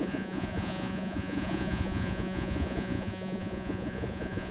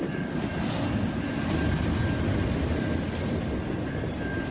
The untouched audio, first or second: second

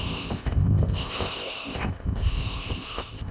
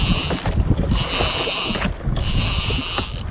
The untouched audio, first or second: second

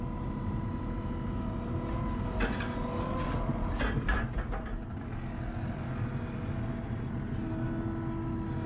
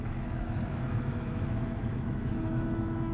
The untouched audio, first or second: first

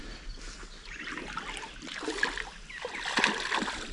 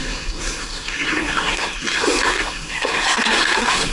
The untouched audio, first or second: first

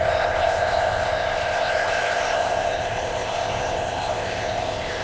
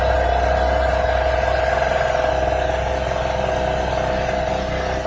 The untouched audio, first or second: second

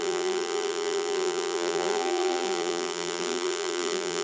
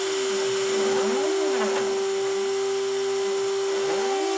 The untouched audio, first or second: second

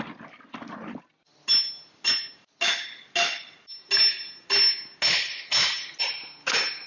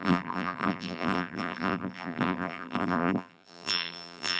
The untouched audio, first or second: first